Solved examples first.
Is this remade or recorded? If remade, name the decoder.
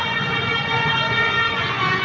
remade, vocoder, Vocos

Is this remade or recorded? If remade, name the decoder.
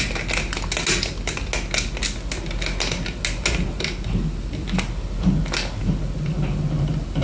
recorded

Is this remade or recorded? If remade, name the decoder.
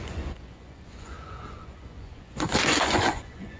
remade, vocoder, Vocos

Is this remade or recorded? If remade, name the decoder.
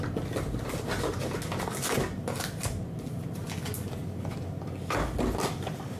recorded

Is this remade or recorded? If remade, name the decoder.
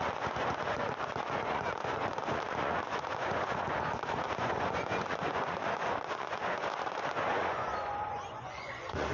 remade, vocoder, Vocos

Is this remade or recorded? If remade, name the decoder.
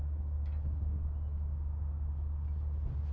recorded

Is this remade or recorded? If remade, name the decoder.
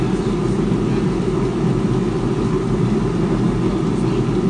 recorded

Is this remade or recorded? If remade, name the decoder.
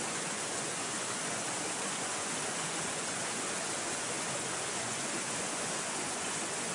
remade, vocoder, Vocos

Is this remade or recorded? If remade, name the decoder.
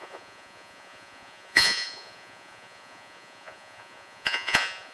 remade, vocoder, Vocos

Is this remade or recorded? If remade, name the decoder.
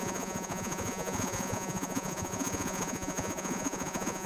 remade, vocoder, Vocos